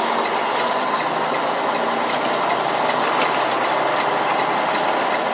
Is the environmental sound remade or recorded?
recorded